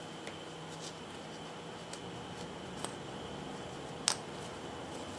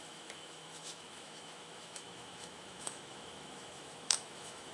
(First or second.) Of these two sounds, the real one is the first